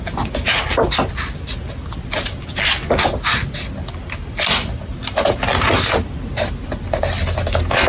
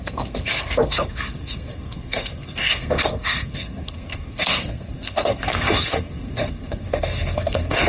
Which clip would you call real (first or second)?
first